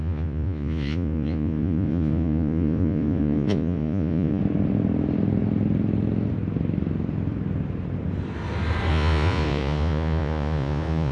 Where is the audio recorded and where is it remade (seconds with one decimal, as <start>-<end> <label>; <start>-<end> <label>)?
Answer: 0.0-4.4 remade; 4.4-8.9 recorded; 8.9-11.1 remade